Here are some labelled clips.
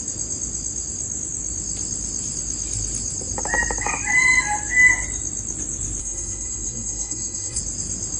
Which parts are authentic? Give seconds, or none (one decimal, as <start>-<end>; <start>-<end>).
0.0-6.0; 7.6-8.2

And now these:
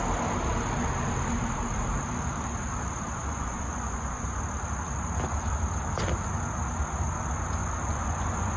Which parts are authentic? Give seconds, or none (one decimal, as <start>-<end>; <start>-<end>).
0.0-3.2; 4.4-7.6

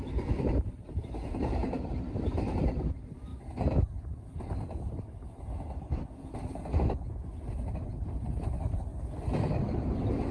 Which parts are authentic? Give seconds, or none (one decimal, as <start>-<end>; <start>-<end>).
3.3-7.7; 8.9-9.9

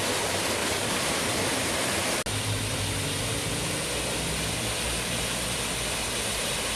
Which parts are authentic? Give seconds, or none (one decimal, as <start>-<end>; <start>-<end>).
0.0-0.6; 2.1-3.4